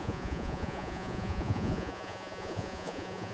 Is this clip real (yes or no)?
no